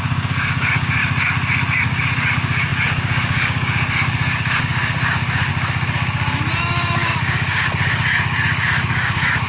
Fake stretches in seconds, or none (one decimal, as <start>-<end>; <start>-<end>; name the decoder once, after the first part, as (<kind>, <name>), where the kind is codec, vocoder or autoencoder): 0.0-1.0 (codec, DAC); 1.8-5.5; 6.6-9.5